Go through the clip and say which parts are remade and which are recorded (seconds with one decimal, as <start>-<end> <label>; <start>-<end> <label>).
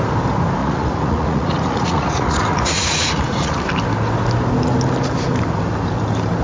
0.0-0.6 recorded; 0.6-3.6 remade; 3.6-6.4 recorded